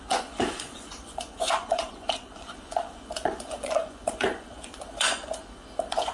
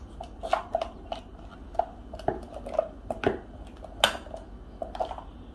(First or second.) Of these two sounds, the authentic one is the second